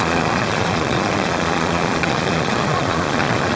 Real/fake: fake